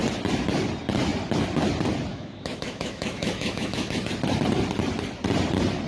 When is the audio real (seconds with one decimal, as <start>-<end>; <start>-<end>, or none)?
0.0-2.1; 4.1-5.9